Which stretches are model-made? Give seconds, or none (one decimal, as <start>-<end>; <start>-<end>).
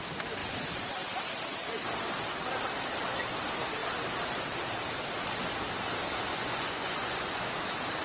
6.3-7.5